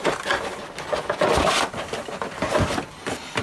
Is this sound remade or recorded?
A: recorded